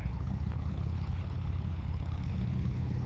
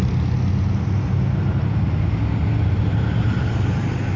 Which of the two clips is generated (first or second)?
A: first